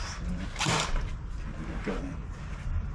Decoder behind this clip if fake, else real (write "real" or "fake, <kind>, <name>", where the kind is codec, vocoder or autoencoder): real